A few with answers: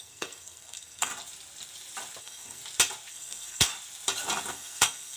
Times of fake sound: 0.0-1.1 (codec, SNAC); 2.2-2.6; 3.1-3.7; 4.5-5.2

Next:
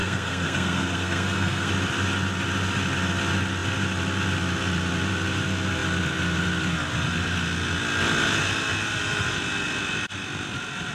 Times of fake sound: 0.0-1.7 (codec, SNAC)

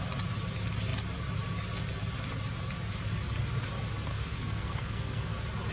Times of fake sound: 4.1-5.3 (codec, SNAC)

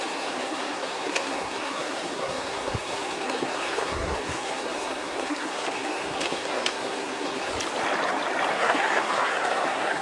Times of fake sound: 0.0-7.5 (codec, SNAC); 8.5-10.0

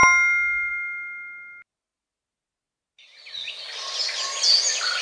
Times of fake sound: none

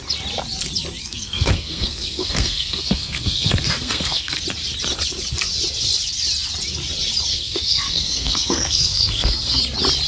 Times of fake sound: 1.0-4.4 (codec, SNAC); 7.3-9.6

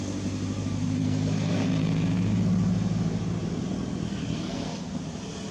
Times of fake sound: 1.0-1.7 (codec, SNAC); 4.2-5.0

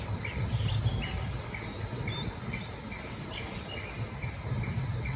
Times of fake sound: none